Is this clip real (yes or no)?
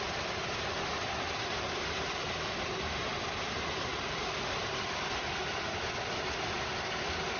yes